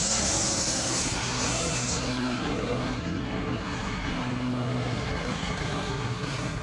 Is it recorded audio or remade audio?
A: remade